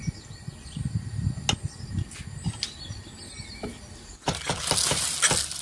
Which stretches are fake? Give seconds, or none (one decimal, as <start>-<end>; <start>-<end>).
none